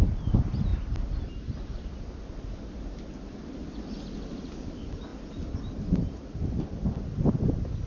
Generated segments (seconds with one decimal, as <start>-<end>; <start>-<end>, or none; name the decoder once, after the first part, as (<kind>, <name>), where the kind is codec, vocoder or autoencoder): none